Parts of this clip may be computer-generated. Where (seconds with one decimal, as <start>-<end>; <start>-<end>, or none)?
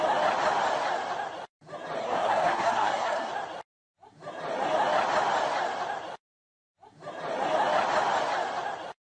2.0-3.3